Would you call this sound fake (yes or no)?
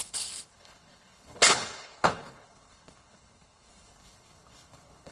yes